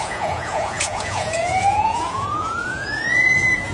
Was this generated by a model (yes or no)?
yes